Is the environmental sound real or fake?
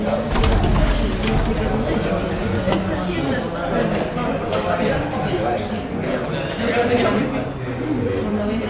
real